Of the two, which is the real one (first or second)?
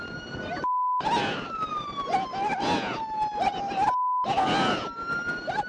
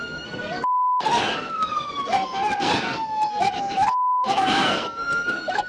first